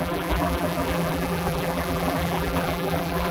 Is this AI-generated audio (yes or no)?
yes